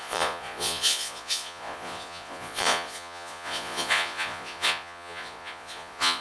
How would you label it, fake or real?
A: fake